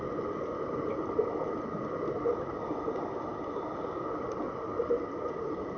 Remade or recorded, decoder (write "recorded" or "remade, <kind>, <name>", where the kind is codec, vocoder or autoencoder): recorded